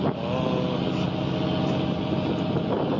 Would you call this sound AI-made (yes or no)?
no